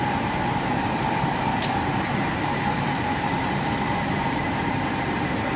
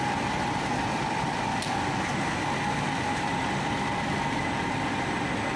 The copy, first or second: first